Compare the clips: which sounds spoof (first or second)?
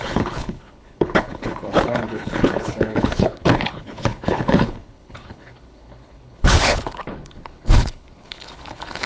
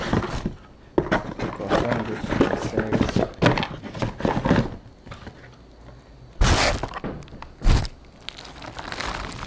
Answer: first